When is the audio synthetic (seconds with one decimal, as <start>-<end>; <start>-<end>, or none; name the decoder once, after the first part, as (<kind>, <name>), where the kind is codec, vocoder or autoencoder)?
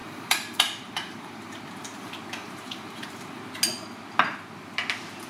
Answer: 0.0-1.6 (vocoder, BigVGAN v2); 2.4-3.4